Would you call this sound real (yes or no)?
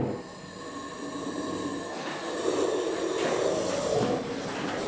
yes